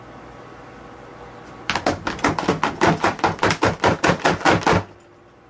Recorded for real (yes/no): yes